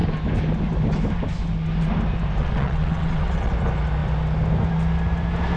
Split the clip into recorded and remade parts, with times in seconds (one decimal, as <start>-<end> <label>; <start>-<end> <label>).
0.0-2.4 recorded; 2.4-3.5 remade; 3.5-5.6 recorded